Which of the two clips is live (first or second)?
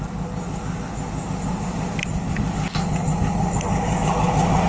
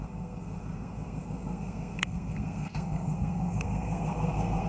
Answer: first